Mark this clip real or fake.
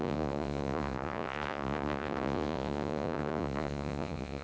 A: fake